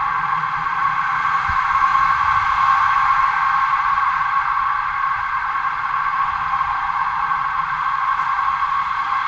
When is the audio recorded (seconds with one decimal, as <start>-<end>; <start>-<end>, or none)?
1.9-3.7